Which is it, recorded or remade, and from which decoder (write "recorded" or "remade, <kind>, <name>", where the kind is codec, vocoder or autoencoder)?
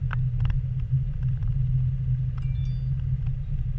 recorded